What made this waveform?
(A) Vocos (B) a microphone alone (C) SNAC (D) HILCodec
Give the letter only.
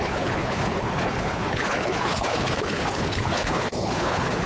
D